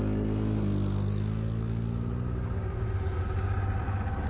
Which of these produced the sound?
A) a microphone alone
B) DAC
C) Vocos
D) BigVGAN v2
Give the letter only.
A